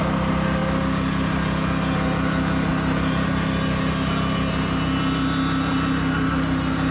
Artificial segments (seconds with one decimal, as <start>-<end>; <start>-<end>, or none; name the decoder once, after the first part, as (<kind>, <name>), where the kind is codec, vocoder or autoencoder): none